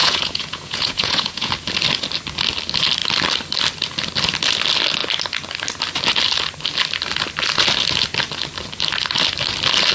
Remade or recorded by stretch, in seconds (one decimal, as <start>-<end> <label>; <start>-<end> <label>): 0.0-1.5 remade; 1.5-9.9 recorded